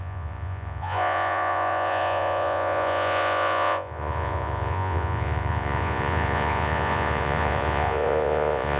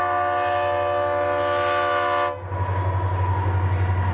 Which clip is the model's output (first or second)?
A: first